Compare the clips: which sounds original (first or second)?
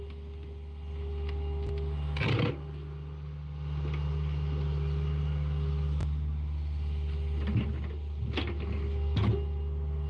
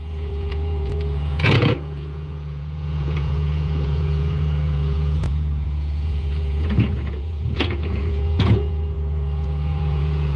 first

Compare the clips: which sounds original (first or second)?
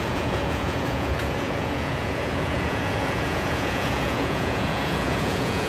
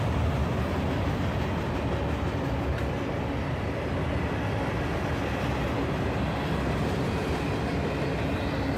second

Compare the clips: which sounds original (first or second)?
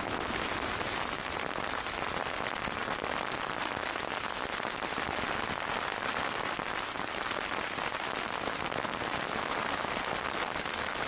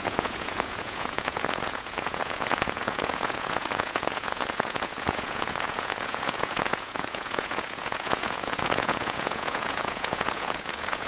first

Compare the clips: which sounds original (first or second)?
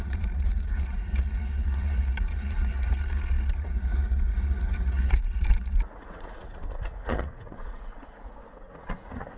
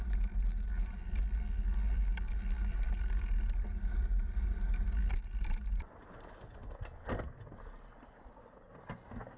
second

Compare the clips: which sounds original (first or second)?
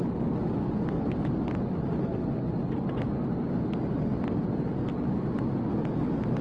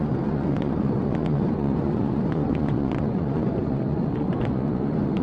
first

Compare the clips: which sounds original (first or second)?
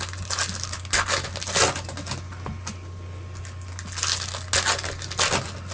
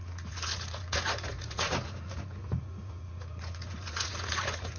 first